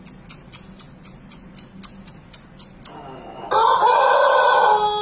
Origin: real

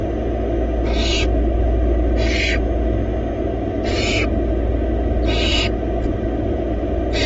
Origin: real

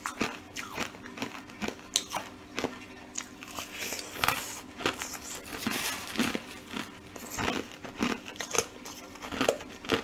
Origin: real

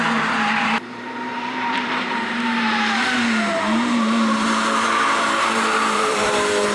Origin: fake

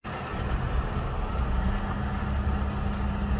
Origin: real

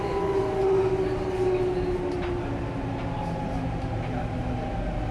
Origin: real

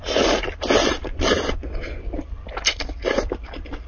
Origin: real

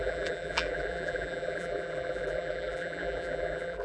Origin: fake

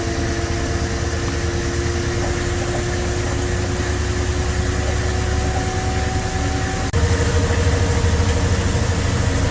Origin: real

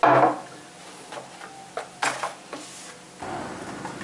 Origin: real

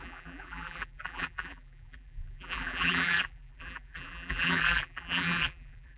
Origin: fake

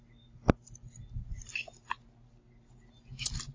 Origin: real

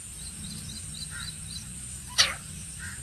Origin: real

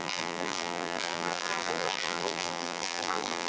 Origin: fake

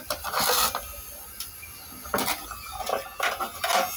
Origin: fake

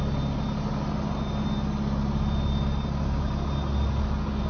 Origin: real